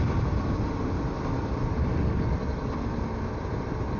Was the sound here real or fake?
real